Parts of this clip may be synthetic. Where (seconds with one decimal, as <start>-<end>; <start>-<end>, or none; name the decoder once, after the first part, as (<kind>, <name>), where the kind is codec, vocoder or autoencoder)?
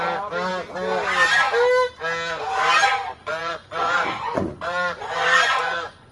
3.2-6.1 (vocoder, Vocos)